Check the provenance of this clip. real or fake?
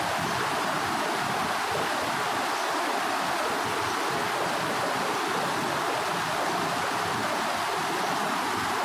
real